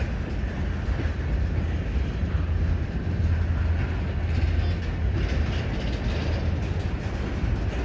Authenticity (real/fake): real